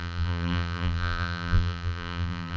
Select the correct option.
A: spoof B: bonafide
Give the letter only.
A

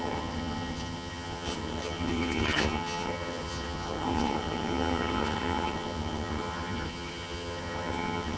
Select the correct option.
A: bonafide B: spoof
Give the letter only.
B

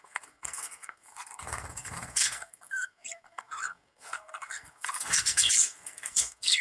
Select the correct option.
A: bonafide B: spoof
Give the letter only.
B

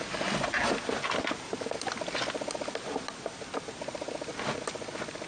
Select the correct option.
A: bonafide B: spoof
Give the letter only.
A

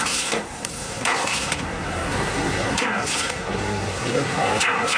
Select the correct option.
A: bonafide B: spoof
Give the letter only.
B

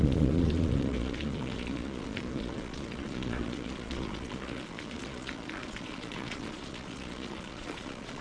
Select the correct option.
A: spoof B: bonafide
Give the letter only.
A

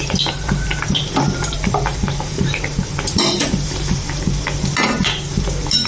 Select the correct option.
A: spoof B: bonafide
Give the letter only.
A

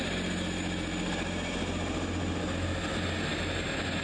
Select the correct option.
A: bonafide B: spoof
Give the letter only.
A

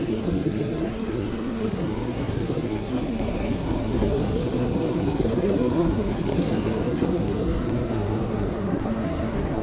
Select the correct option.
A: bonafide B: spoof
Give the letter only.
B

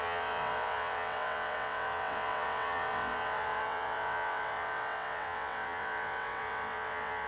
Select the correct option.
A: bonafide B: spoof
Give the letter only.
B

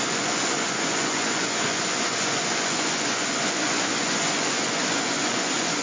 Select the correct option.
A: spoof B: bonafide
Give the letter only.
A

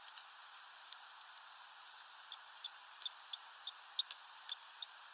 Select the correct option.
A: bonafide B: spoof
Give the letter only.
A